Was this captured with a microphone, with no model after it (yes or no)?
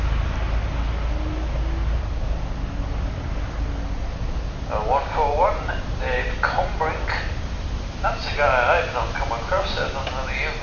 yes